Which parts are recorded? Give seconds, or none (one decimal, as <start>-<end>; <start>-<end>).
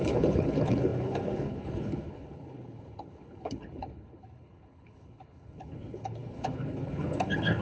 none